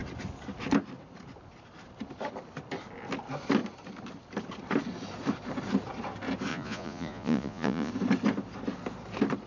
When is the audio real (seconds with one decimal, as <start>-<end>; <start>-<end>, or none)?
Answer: 0.0-6.5; 7.9-9.5